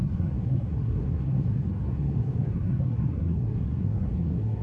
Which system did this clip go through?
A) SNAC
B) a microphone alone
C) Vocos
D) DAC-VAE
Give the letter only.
A